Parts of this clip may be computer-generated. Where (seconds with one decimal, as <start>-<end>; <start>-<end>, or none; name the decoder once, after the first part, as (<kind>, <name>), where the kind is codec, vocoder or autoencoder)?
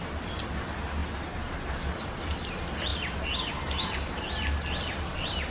0.0-1.0 (vocoder, BigVGAN v2); 1.9-5.5